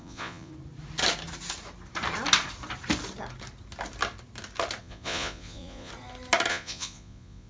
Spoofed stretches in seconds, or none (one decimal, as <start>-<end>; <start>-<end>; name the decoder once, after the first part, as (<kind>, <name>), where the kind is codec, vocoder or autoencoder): 0.0-0.5 (vocoder, Vocos); 4.8-5.9; 6.5-7.5